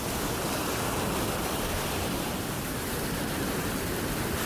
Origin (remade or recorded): recorded